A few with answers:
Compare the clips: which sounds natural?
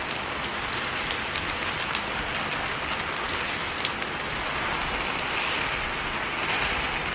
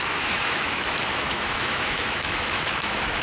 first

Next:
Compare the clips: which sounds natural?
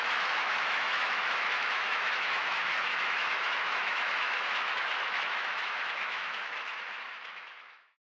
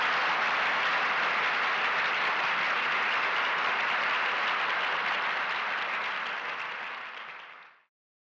second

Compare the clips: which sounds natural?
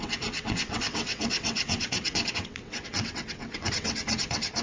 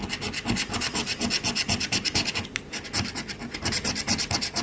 second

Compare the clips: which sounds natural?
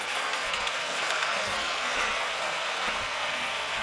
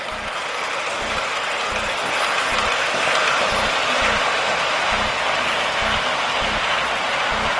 second